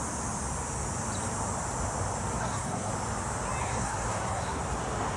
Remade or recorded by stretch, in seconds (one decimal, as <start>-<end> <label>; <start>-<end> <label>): 0.0-2.4 recorded; 2.4-2.9 remade; 2.9-3.6 recorded; 3.6-4.6 remade; 4.6-5.2 recorded

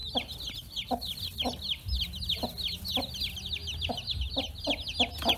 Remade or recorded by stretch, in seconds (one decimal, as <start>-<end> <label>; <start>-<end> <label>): 0.0-5.4 recorded

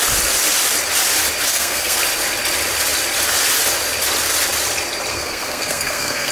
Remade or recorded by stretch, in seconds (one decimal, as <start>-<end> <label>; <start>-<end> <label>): 0.0-1.5 recorded; 1.5-2.0 remade; 2.0-5.1 recorded; 5.1-6.3 remade

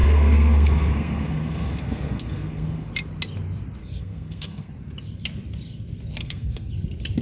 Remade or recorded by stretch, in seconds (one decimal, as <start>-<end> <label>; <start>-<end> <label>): 0.0-2.9 remade; 2.9-3.8 recorded; 3.8-4.7 remade; 4.7-6.2 recorded; 6.2-6.7 remade; 6.7-7.2 recorded

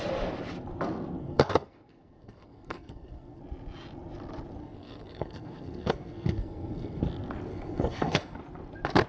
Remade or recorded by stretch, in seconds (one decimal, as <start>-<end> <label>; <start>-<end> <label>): 0.0-1.2 recorded; 1.2-3.4 remade; 3.4-4.6 recorded; 4.6-7.0 remade; 7.0-7.5 recorded; 7.5-8.4 remade; 8.4-9.1 recorded

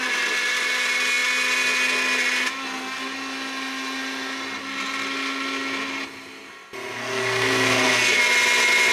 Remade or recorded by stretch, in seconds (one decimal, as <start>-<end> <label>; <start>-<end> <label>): 0.0-7.0 recorded; 7.0-8.2 remade; 8.2-8.9 recorded